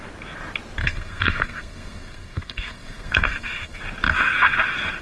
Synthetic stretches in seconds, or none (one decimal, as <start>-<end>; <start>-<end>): 0.8-3.8